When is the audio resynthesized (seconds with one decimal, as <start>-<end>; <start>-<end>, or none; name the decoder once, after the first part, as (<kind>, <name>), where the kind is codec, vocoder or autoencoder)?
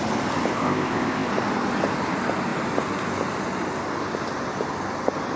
0.5-1.3 (codec, ZipCodec)